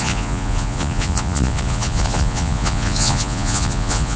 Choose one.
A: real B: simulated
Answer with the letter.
B